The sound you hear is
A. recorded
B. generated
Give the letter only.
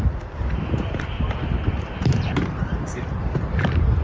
B